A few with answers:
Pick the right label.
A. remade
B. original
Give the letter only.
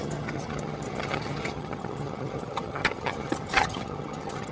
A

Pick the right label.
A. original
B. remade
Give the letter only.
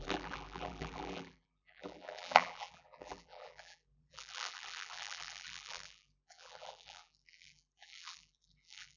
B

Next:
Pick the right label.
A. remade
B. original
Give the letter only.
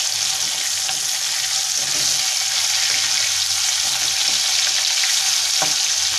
B